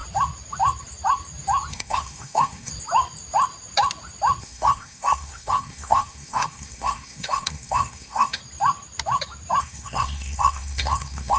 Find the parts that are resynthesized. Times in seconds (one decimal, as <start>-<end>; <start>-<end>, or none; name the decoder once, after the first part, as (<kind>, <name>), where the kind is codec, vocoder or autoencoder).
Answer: 1.7-2.7 (codec, SNAC); 4.4-8.4; 9.6-11.4